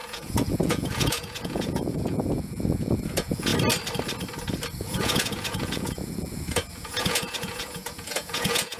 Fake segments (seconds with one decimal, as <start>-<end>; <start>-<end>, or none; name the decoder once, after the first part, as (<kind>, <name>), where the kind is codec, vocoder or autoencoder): 0.0-3.5 (vocoder, Vocos); 4.8-8.8